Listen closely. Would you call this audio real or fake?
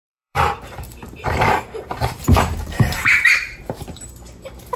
fake